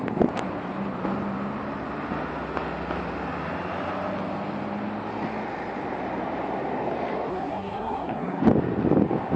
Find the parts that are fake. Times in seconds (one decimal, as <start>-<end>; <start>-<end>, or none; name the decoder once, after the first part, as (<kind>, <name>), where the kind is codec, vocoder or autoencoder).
7.3-8.4 (codec, SNAC)